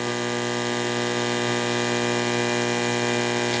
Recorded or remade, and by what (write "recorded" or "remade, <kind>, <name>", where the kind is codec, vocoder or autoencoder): recorded